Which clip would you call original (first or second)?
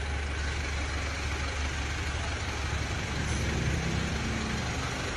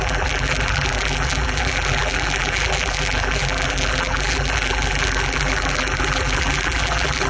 first